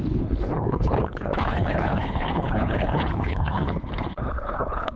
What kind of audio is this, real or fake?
fake